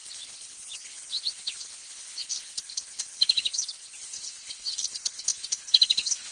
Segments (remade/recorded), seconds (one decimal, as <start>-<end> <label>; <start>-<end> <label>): 0.0-6.3 remade

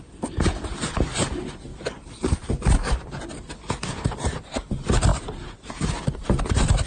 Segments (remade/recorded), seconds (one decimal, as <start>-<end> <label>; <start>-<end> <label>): 0.0-6.9 recorded

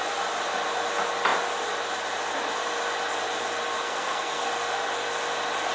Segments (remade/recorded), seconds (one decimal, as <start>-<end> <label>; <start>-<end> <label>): 0.0-3.8 recorded; 3.8-4.5 remade; 4.5-5.7 recorded

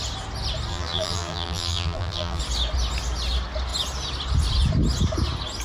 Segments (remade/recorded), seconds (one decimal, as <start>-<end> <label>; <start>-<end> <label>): 0.0-0.7 recorded; 0.7-2.4 remade; 2.4-5.6 recorded

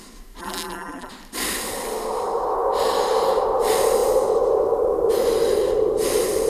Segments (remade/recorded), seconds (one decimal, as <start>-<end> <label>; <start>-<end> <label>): 0.0-0.4 recorded; 0.4-1.1 remade; 1.1-6.5 recorded

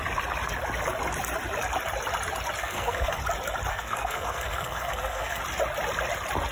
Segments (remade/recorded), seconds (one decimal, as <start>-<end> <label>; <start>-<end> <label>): 0.0-2.6 recorded; 2.6-3.2 remade; 3.2-3.7 recorded; 3.7-5.4 remade; 5.4-6.5 recorded

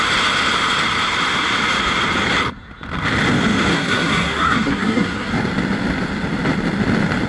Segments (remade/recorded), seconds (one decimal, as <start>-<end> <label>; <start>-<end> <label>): 0.0-3.7 recorded; 3.7-5.3 remade; 5.3-7.3 recorded